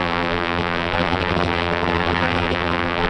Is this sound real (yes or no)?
no